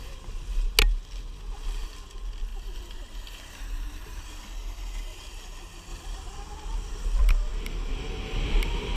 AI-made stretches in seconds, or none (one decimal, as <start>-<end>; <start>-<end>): 2.5-4.3